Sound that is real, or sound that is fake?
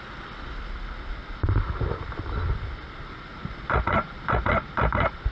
real